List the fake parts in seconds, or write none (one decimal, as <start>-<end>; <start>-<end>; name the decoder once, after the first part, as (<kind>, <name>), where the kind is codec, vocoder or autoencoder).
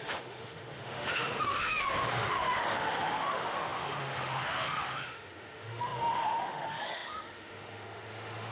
0.0-8.5 (autoencoder, DAC-VAE)